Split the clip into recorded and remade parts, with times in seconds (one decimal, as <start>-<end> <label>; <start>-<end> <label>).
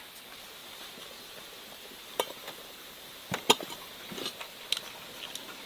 0.0-0.6 recorded; 0.6-4.0 remade; 4.0-5.7 recorded